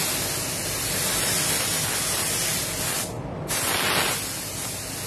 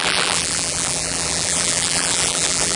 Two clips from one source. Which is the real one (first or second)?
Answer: first